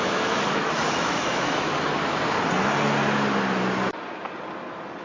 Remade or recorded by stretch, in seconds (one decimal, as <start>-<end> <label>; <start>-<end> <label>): 0.0-1.7 remade; 1.7-5.0 recorded